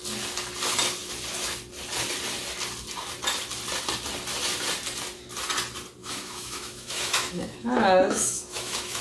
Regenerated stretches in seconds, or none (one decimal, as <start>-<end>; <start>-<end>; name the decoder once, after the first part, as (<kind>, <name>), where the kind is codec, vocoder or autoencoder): 6.0-9.0 (autoencoder, DAC-VAE)